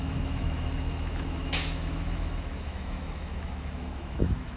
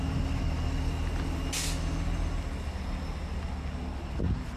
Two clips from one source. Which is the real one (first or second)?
second